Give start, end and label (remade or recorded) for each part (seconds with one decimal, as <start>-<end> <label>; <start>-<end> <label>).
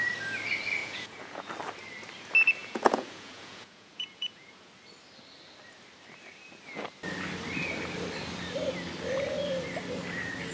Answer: 0.0-0.8 recorded; 0.8-1.5 remade; 1.5-2.6 recorded; 2.6-4.7 remade; 4.7-10.5 recorded